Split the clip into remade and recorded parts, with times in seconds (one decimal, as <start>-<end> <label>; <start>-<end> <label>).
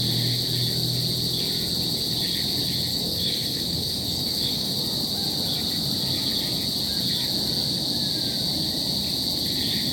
0.0-2.9 recorded; 2.9-4.7 remade; 4.7-9.9 recorded